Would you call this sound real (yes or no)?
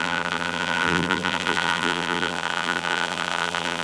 no